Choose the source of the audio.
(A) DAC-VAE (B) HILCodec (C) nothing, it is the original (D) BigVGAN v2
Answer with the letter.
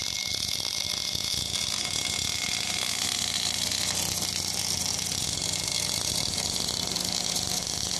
C